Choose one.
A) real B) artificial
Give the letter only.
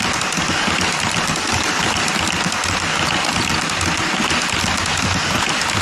A